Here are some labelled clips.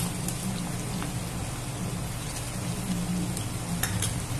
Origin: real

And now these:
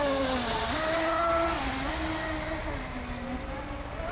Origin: real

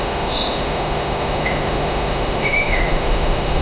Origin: fake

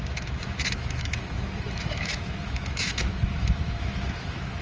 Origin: fake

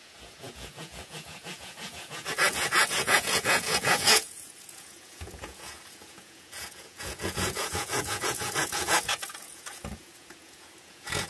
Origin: fake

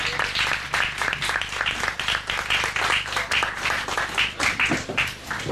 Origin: fake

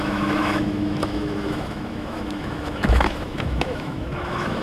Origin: fake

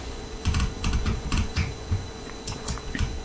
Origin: fake